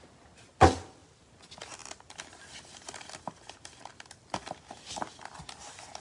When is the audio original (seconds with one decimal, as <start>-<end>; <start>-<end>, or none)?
0.0-6.0